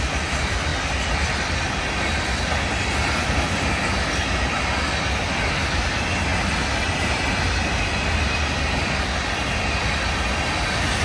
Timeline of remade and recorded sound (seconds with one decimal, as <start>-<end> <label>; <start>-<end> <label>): 0.0-11.0 recorded